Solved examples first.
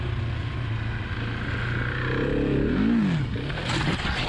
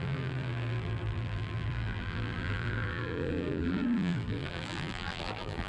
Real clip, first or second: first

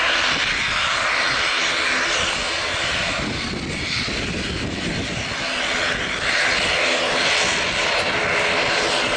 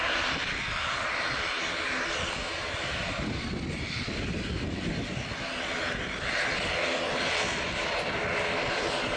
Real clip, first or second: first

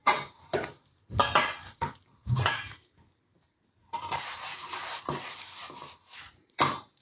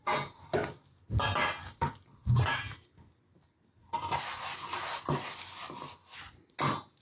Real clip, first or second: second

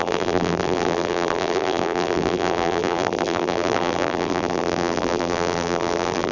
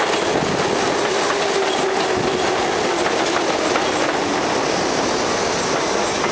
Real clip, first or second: second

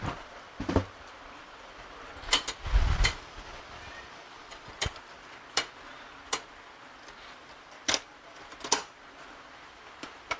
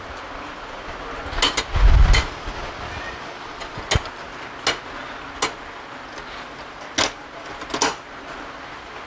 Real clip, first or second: second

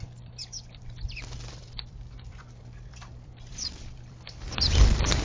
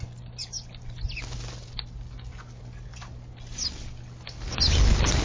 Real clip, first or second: second